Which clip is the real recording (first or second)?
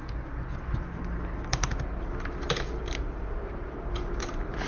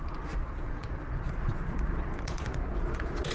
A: first